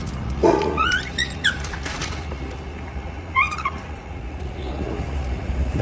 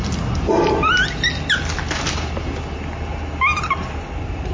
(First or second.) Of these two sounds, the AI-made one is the first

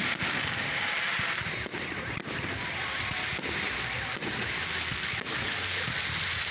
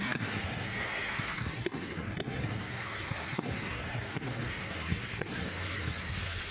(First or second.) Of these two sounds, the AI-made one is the second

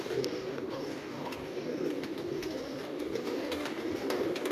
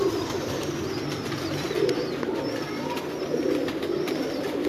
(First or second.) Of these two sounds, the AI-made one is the first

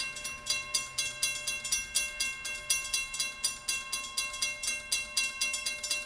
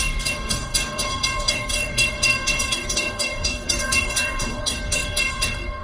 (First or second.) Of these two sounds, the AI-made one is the second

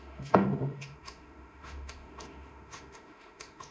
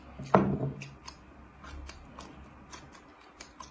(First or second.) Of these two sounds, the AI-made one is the first